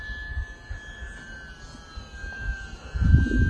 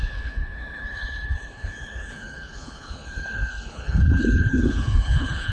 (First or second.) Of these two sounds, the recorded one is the first